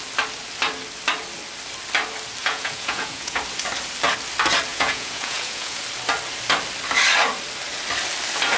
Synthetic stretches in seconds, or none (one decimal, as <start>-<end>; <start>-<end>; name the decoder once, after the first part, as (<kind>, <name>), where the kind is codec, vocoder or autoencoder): 2.4-3.4 (vocoder, Vocos); 4.7-5.8